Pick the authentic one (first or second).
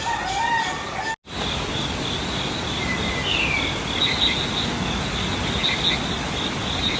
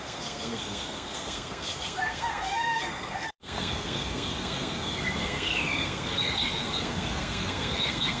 first